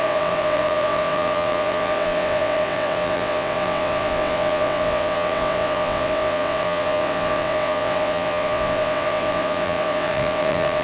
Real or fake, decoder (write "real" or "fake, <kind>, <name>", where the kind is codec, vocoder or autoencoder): fake, vocoder, WaveNeXt